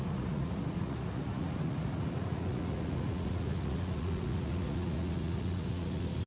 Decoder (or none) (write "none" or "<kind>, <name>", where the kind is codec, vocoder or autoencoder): vocoder, Vocos